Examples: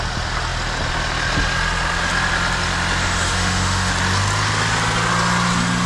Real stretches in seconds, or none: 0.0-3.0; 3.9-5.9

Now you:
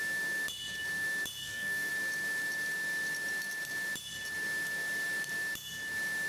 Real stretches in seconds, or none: 0.0-1.4; 1.9-6.3

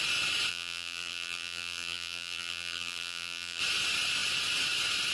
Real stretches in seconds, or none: 0.0-0.5; 3.6-5.1

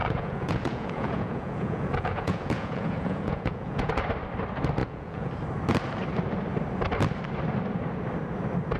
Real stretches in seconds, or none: 3.9-4.8; 5.3-8.8

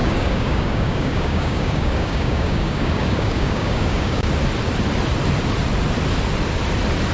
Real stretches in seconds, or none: 4.3-7.1